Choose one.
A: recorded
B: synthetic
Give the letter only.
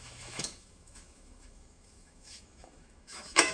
B